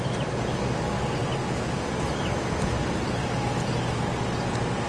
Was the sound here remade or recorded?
recorded